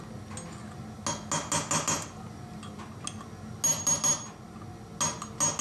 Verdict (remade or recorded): recorded